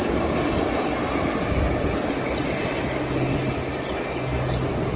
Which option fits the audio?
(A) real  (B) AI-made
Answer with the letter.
A